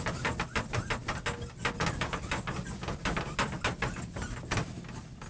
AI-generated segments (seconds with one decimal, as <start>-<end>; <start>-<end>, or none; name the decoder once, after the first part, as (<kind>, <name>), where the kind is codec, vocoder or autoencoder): none